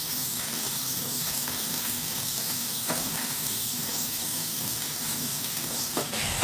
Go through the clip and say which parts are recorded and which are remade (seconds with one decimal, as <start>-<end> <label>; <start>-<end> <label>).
0.0-6.4 remade